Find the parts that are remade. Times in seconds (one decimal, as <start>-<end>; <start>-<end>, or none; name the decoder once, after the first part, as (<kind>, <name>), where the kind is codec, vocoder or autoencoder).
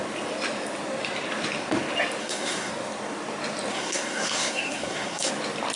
2.2-2.7 (codec, SNAC); 3.7-5.3